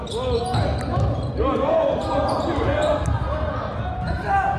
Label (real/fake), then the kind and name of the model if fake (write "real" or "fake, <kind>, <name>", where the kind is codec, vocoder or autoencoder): real